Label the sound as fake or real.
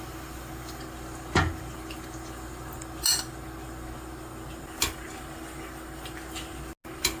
real